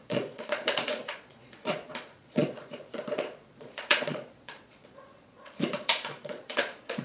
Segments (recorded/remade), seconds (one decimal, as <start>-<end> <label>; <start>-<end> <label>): 0.0-7.0 remade